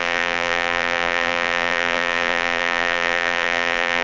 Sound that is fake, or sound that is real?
fake